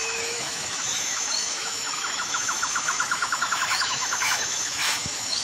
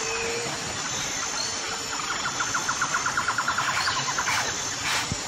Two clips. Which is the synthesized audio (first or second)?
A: first